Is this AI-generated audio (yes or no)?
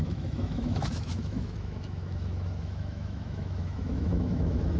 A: yes